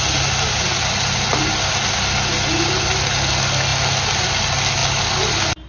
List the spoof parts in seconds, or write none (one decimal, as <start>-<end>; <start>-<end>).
none